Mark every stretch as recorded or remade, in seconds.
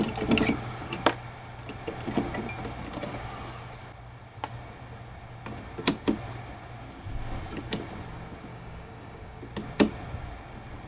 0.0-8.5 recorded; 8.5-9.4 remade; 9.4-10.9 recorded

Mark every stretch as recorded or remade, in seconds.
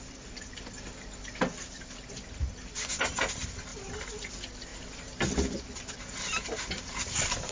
0.0-7.5 recorded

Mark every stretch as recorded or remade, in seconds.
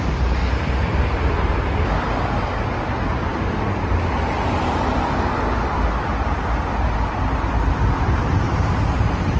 0.0-0.4 recorded; 0.4-2.5 remade; 2.5-3.3 recorded; 3.3-8.3 remade; 8.3-9.4 recorded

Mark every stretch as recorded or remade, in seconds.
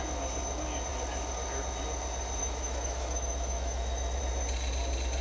0.0-2.4 recorded; 2.4-4.2 remade; 4.2-5.2 recorded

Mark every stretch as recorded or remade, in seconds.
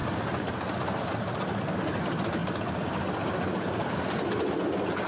0.0-5.1 recorded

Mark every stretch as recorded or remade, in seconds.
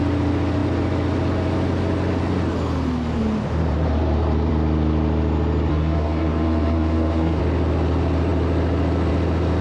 0.0-5.7 recorded; 5.7-7.4 remade; 7.4-9.6 recorded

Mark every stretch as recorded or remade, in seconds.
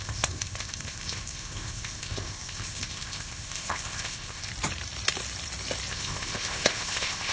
0.0-4.5 remade; 4.5-5.9 recorded; 5.9-7.3 remade